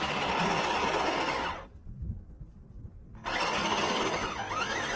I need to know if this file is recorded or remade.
recorded